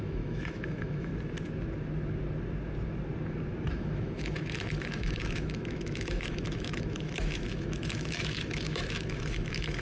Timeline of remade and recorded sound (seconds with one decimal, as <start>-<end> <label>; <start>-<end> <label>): 0.0-1.1 remade; 1.1-3.7 recorded; 3.7-9.8 remade